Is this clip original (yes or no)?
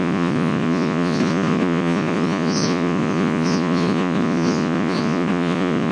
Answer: no